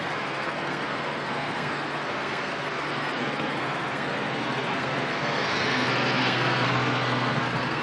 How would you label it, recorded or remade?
remade